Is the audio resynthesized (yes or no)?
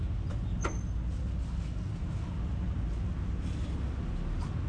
no